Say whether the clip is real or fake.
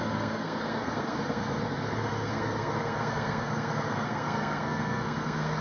fake